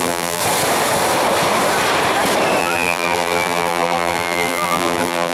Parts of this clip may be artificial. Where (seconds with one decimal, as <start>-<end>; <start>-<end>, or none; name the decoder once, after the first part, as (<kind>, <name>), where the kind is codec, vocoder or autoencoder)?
0.0-0.4 (vocoder, BigVGAN v2); 2.6-5.3